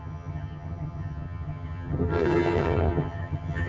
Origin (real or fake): fake